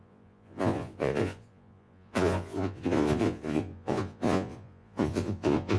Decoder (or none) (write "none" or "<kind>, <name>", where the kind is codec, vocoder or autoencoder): vocoder, Vocos